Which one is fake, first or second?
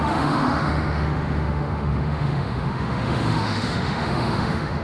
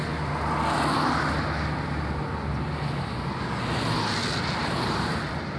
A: first